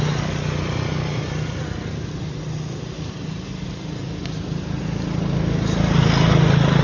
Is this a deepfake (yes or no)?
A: no